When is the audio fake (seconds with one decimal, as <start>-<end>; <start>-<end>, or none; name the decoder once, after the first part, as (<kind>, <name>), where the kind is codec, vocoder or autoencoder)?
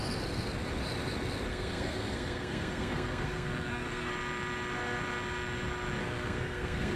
1.5-4.1 (codec, SNAC); 6.0-7.0